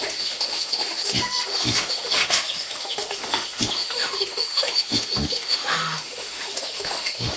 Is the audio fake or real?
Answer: fake